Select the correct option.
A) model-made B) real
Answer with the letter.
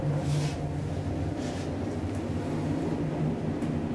B